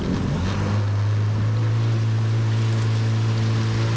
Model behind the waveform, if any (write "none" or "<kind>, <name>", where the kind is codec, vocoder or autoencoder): none